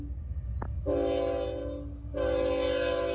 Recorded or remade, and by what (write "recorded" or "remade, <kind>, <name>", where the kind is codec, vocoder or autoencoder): recorded